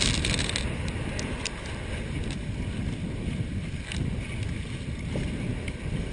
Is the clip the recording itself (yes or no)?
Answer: yes